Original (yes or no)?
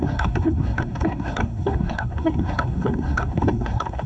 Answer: no